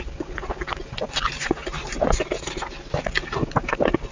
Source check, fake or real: real